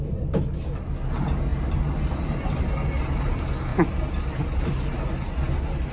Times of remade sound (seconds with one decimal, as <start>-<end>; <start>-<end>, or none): 1.5-2.2; 3.7-4.9